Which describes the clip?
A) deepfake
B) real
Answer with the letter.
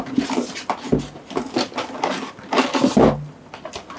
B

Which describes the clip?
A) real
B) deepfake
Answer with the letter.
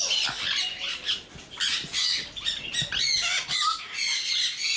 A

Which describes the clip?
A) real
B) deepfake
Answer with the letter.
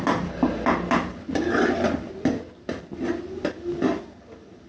A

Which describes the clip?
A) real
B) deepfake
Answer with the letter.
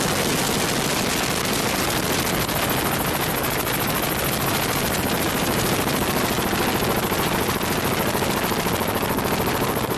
A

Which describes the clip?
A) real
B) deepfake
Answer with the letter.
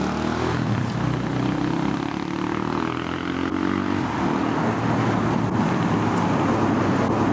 A